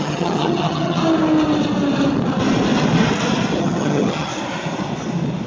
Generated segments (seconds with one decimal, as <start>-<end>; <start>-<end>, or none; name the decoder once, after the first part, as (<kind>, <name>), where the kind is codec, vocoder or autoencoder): 0.0-1.0 (vocoder, HiFi-GAN); 3.6-4.3